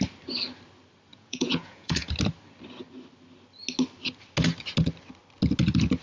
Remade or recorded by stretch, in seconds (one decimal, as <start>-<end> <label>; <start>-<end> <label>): 0.0-1.1 recorded; 1.1-2.1 remade; 2.1-6.0 recorded